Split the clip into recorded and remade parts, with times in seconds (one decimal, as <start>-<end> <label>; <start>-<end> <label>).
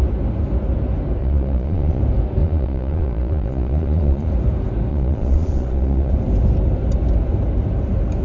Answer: 0.0-1.2 recorded; 1.2-2.0 remade; 2.0-2.4 recorded; 2.4-4.3 remade; 4.3-4.9 recorded; 4.9-6.1 remade; 6.1-8.2 recorded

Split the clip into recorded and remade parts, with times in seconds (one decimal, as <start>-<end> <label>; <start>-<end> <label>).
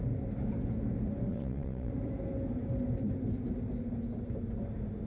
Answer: 0.0-1.3 recorded; 1.3-1.9 remade; 1.9-5.1 recorded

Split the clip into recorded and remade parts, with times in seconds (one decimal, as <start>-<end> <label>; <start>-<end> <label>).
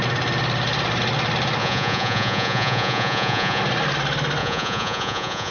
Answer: 0.0-1.6 recorded; 1.6-3.6 remade; 3.6-4.4 recorded; 4.4-5.5 remade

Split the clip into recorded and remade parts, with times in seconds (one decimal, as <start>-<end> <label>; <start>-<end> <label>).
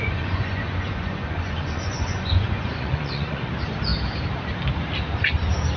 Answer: 0.0-3.5 remade; 3.5-5.8 recorded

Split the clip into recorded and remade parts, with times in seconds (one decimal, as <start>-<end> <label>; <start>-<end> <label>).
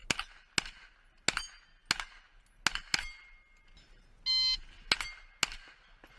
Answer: 0.0-6.2 recorded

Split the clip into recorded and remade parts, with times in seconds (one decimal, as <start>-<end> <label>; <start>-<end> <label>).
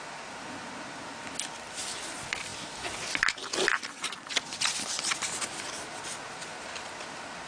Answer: 0.0-7.5 recorded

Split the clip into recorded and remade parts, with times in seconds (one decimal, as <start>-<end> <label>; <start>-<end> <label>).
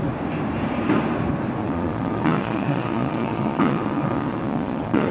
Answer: 0.0-1.6 recorded; 1.6-5.1 remade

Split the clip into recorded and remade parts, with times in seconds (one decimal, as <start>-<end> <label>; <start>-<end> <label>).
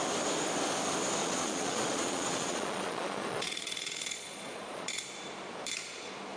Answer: 0.0-1.2 recorded; 1.2-5.0 remade; 5.0-6.4 recorded